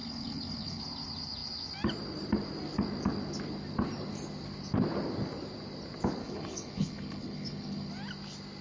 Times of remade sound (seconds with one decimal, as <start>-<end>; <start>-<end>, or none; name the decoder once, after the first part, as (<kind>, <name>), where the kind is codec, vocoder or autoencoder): 0.0-0.8 (codec, HILCodec); 6.2-7.9